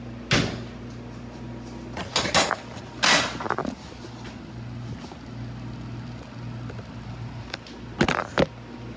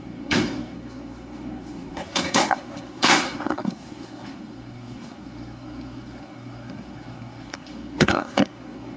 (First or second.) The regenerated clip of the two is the second